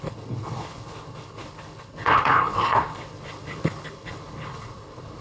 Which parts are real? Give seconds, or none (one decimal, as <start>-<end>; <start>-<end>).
none